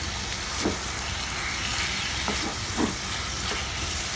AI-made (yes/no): no